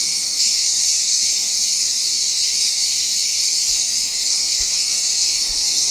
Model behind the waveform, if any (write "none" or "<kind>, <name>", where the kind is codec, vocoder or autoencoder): codec, SNAC